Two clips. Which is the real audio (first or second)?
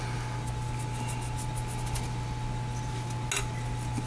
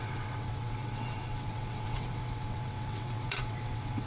first